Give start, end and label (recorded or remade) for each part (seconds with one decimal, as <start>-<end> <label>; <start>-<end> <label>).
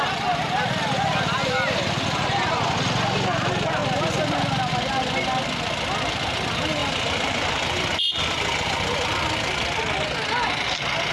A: 0.0-6.8 recorded; 6.8-8.2 remade; 8.2-11.1 recorded